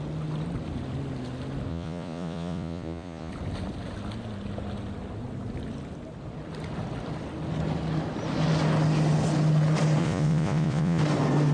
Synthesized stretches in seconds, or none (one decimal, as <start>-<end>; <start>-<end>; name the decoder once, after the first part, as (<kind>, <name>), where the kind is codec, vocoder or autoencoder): 1.7-3.3 (vocoder, Vocos); 10.0-11.0